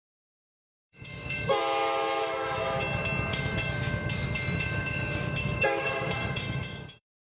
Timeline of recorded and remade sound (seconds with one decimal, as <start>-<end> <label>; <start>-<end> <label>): 0.0-0.7 recorded; 0.7-1.6 remade; 1.6-3.3 recorded; 3.3-7.3 remade